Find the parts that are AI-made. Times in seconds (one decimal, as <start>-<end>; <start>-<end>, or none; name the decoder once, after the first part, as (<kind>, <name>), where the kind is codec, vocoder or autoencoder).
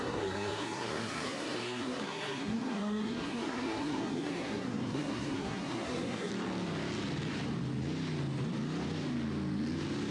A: 0.0-6.3 (codec, SNAC)